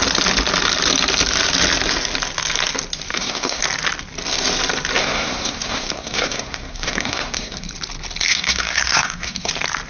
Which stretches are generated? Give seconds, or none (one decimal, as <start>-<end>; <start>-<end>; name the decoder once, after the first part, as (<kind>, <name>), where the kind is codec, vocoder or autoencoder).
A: 3.1-3.6 (codec, SNAC); 5.0-7.7; 8.3-9.5